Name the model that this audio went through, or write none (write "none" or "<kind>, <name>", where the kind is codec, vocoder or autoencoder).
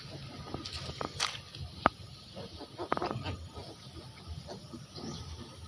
none